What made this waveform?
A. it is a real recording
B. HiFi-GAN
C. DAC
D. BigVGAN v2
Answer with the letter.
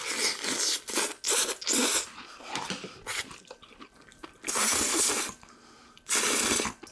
A